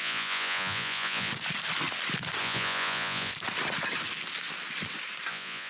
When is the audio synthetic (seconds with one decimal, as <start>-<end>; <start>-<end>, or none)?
0.0-1.3; 2.4-3.3; 5.3-5.7

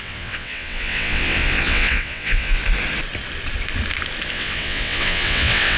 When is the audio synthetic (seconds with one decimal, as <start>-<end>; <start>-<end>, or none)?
0.0-2.6; 4.3-5.8